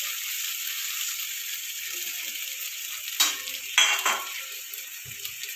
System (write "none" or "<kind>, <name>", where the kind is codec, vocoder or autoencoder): vocoder, BigVGAN v2